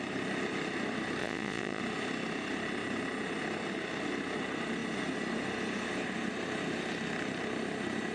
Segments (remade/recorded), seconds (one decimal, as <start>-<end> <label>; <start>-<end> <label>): 0.0-1.2 recorded; 1.2-1.8 remade; 1.8-8.1 recorded